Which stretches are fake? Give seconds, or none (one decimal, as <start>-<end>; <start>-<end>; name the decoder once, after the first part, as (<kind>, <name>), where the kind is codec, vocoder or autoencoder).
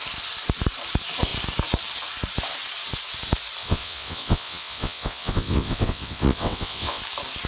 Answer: 3.6-7.0 (vocoder, WaveNeXt)